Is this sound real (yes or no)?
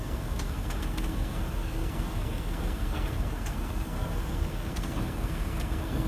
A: no